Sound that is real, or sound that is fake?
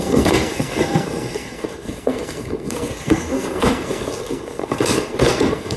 fake